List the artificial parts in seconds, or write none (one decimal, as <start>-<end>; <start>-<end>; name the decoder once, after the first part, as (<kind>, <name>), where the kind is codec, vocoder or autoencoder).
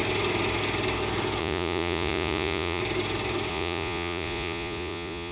1.4-2.8 (vocoder, Vocos); 3.5-5.3